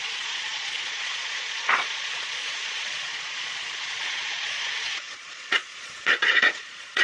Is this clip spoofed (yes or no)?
yes